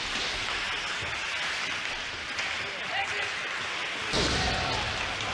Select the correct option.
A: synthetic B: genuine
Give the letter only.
B